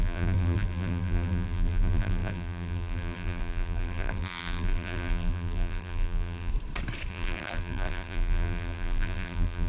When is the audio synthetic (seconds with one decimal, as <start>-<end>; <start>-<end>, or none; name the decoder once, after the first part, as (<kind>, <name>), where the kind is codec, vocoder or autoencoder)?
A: 0.0-6.5 (vocoder, BigVGAN v2); 7.1-9.7